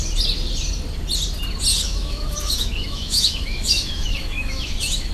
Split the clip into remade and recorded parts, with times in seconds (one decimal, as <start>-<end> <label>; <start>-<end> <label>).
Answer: 0.0-1.7 recorded; 1.7-5.1 remade